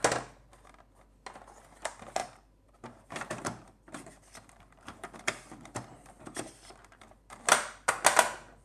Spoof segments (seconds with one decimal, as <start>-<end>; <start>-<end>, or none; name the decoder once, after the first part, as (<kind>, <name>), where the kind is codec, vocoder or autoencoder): 2.2-7.4 (vocoder, BigVGAN v2)